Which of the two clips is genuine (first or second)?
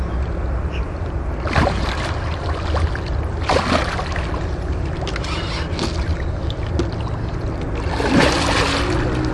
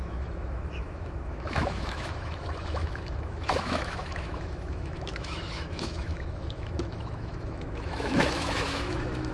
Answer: first